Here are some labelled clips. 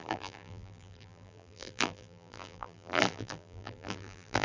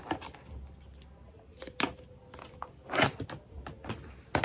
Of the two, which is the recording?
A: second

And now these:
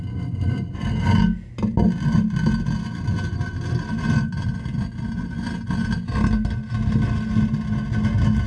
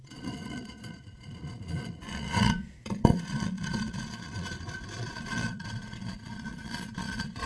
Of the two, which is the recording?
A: first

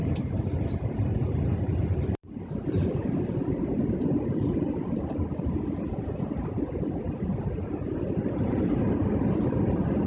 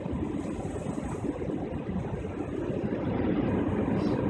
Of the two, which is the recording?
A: second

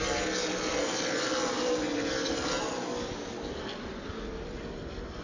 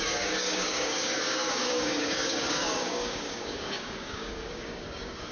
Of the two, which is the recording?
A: first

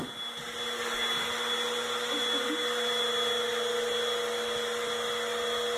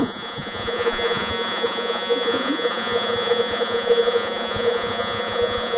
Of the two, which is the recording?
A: first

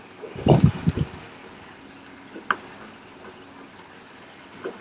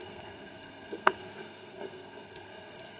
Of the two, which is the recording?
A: first